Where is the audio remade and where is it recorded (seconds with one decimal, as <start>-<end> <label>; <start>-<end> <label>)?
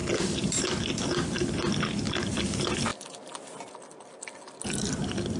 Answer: 0.0-2.0 remade; 2.0-5.4 recorded